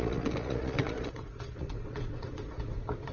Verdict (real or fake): fake